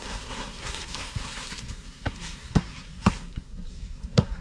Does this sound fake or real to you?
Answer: fake